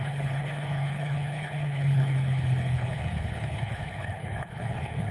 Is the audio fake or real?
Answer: fake